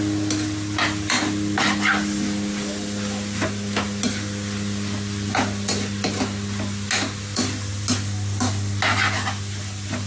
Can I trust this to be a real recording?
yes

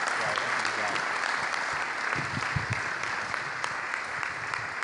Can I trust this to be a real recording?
no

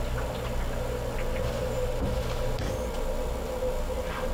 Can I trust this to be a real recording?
yes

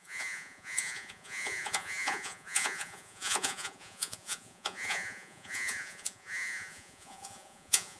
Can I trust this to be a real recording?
no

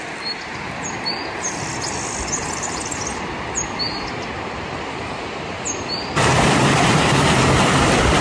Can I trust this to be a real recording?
yes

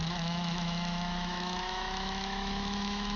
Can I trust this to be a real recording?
no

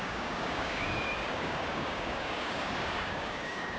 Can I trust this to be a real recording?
no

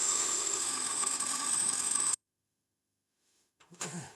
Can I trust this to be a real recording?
no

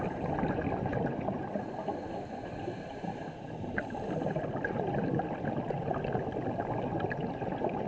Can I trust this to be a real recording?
yes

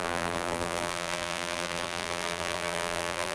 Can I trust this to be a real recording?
no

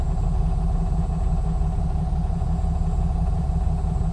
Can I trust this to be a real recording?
no